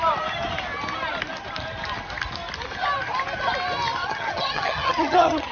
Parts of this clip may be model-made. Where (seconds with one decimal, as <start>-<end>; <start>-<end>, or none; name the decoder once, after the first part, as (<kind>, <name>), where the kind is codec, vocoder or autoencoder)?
4.0-5.5 (vocoder, HiFi-GAN)